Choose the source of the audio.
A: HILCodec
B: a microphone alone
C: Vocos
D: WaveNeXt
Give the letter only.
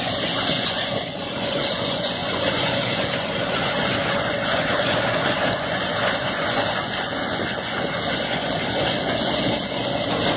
C